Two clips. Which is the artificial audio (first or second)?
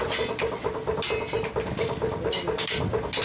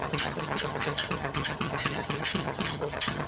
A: second